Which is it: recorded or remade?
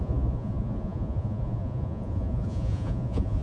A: remade